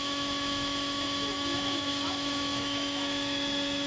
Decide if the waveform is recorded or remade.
remade